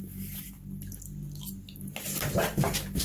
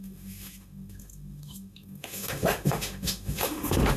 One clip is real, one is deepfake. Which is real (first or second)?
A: first